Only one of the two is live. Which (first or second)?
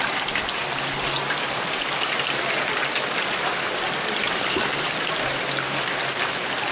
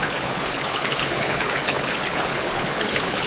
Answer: first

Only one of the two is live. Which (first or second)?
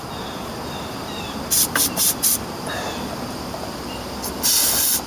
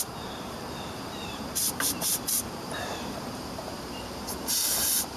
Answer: first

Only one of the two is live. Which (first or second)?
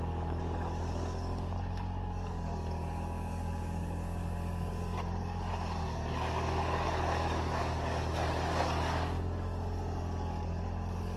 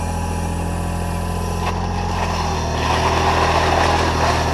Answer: second